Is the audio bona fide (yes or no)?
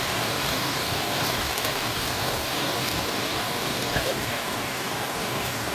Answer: no